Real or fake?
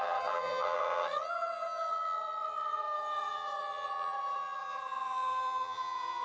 fake